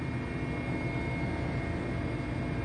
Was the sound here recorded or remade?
recorded